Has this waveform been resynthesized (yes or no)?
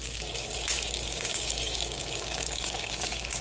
yes